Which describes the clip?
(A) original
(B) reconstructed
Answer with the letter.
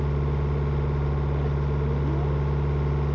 A